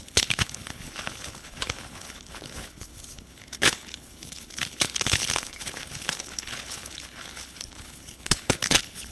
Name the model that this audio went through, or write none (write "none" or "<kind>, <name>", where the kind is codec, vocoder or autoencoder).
codec, HILCodec